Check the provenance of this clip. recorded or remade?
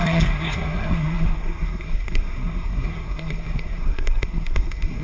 remade